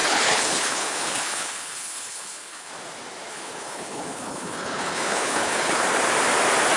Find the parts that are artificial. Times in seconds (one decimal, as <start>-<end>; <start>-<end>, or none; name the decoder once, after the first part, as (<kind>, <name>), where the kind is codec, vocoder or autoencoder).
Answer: 0.0-2.7 (codec, HILCodec); 3.3-5.8